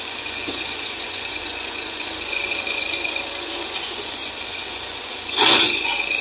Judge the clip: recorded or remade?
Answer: remade